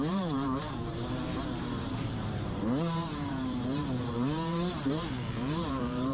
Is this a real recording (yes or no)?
no